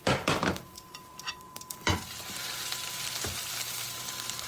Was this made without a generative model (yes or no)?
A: no